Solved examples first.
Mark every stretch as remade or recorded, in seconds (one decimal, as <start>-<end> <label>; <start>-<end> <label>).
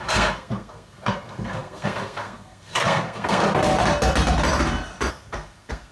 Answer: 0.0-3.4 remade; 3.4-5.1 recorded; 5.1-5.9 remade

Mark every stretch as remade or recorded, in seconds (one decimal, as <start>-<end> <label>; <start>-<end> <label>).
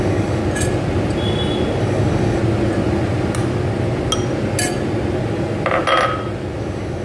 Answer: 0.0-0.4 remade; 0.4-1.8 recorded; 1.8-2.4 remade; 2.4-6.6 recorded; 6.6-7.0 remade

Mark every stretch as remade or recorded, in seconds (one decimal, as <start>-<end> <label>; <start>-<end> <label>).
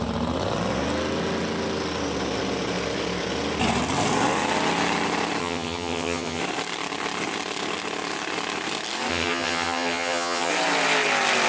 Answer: 0.0-5.4 recorded; 5.4-6.4 remade; 6.4-9.1 recorded; 9.1-10.5 remade; 10.5-11.5 recorded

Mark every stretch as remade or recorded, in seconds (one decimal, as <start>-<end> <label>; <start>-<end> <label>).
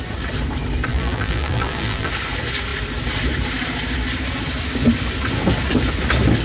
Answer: 0.0-0.9 recorded; 0.9-2.1 remade; 2.1-6.4 recorded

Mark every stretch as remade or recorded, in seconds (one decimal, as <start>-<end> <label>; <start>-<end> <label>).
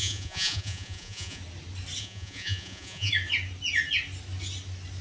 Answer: 0.0-1.4 remade; 1.4-2.0 recorded; 2.0-3.1 remade; 3.1-5.0 recorded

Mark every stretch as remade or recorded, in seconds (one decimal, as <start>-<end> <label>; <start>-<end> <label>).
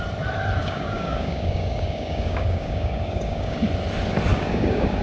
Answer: 0.0-0.6 recorded; 0.6-3.6 remade; 3.6-4.3 recorded; 4.3-5.0 remade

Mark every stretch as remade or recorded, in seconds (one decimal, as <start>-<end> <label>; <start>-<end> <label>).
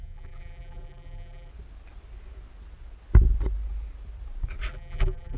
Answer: 0.0-1.5 remade; 1.5-4.7 recorded; 4.7-5.4 remade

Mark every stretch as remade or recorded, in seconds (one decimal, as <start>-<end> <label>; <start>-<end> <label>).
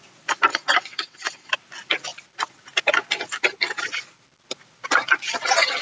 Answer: 0.0-0.5 recorded; 0.5-1.5 remade; 1.5-5.8 recorded